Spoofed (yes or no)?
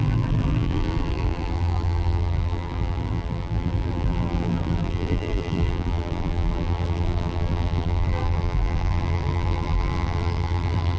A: yes